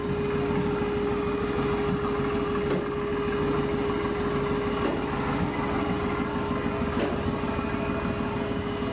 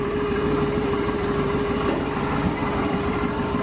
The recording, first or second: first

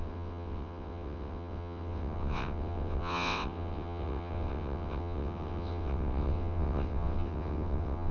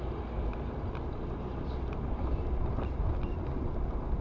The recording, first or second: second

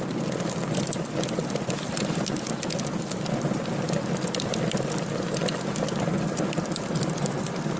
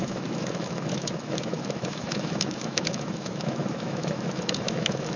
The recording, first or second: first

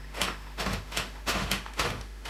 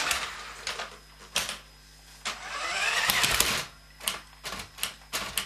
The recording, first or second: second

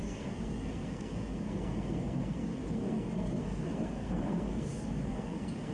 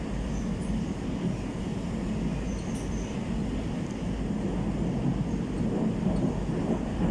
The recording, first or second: second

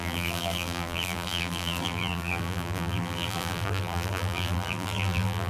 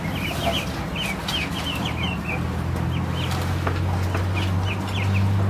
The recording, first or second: second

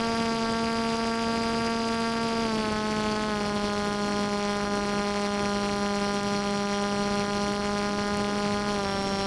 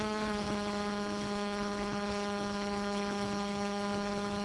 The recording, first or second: first